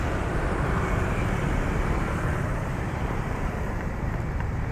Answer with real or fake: fake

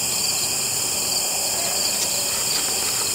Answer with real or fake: real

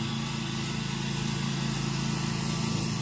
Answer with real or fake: real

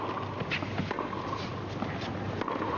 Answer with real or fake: real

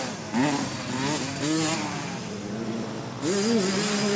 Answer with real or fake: real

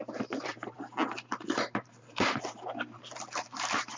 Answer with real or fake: fake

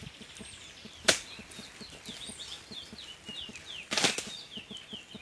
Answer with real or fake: real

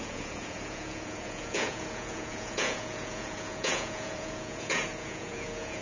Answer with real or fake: fake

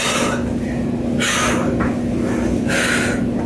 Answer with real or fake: real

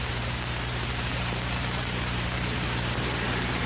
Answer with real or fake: fake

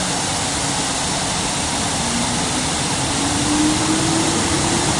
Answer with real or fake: real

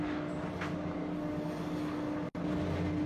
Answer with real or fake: real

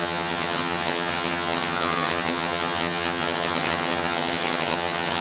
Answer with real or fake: fake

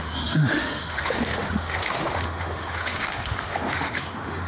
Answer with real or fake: fake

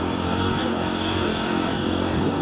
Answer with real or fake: fake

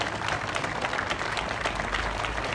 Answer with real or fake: real